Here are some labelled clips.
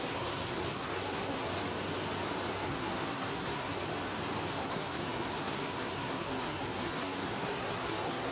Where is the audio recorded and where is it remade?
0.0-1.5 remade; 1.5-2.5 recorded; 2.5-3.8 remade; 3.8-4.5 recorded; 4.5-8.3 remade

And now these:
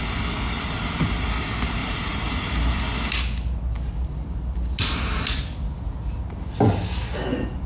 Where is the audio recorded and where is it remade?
0.0-1.8 recorded; 1.8-2.8 remade; 2.8-7.7 recorded